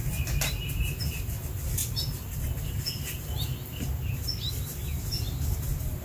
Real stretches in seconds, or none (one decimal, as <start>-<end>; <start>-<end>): 0.0-6.0